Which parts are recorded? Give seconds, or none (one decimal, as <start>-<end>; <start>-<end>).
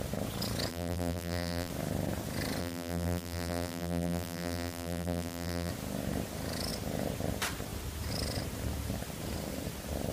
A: 0.0-0.7; 1.7-2.6; 5.7-10.1